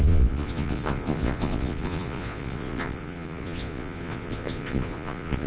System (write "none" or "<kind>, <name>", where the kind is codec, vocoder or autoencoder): vocoder, Vocos